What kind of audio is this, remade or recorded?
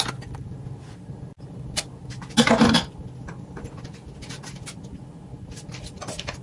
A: recorded